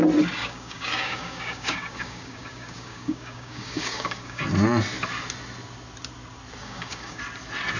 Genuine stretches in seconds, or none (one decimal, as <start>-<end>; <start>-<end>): 0.0-0.4; 4.4-6.6; 7.2-7.8